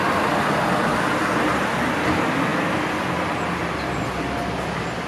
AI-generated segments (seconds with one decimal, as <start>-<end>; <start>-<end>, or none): none

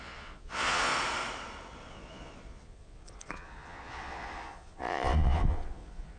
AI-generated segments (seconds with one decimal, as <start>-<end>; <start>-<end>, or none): 0.0-0.9; 1.9-6.2

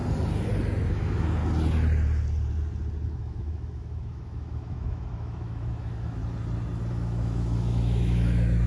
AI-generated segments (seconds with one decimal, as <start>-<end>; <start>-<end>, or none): 0.9-1.4; 3.1-6.2; 6.9-8.7

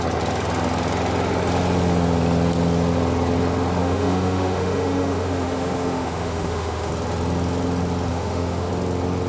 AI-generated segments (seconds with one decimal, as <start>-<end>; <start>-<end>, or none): 3.8-6.9; 8.1-8.7

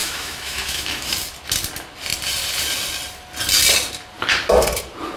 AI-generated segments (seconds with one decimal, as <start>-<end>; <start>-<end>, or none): 0.0-1.1

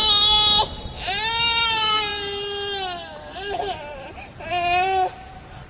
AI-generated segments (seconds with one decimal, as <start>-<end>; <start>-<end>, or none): none

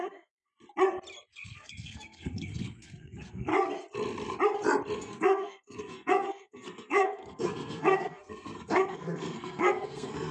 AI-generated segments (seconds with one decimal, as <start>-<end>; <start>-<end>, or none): 0.0-0.5; 1.3-3.5; 5.0-10.3

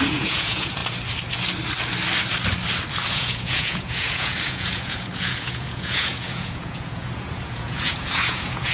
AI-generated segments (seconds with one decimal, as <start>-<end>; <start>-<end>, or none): 0.0-0.8; 3.1-8.7